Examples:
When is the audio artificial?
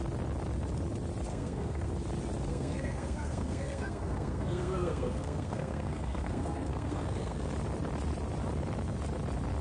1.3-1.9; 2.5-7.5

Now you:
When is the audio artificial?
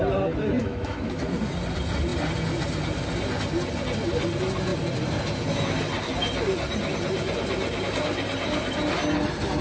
0.6-1.2